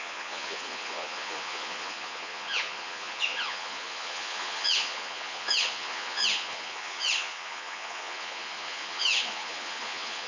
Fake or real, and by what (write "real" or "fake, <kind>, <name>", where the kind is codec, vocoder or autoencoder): fake, vocoder, Vocos